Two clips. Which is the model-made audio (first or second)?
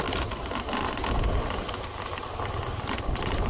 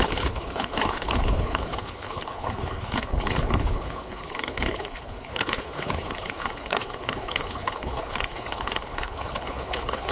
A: second